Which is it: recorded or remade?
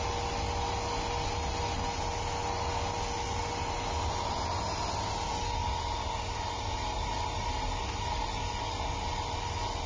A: recorded